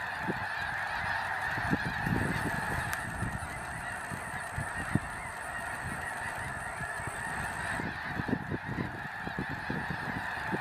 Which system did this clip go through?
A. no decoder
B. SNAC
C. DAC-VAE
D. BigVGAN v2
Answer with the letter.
A